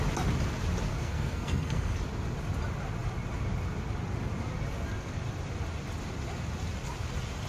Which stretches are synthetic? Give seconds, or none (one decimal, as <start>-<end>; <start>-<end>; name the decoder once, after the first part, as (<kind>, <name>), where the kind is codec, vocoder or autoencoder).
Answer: 0.9-1.9 (codec, SNAC)